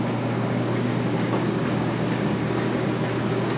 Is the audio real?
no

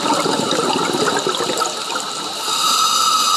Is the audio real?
yes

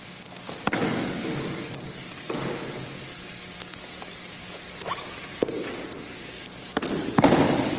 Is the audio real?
no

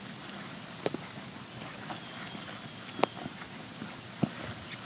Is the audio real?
yes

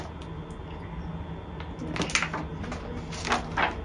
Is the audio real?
yes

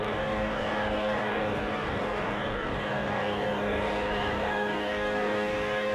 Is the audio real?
no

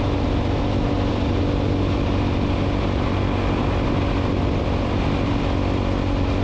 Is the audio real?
yes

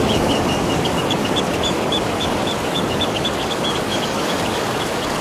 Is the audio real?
no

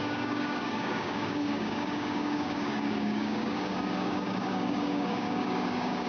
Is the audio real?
no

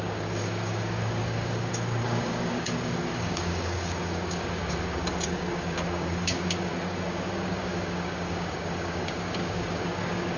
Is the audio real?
no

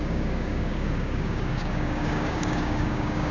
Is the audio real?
no